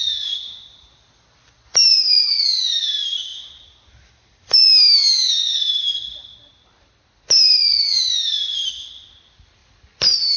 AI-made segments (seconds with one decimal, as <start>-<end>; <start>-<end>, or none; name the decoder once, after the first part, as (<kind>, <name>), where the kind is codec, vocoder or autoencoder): 0.0-3.3 (vocoder, BigVGAN v2); 5.4-6.5; 7.5-10.4